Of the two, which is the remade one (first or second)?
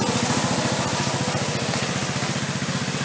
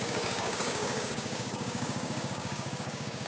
second